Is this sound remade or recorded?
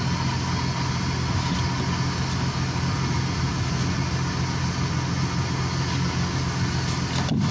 recorded